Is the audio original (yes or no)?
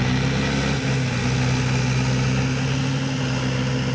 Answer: yes